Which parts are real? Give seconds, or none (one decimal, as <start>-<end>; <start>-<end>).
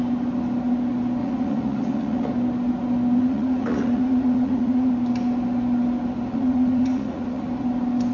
0.0-1.2; 2.3-3.2; 4.9-6.3; 7.5-8.1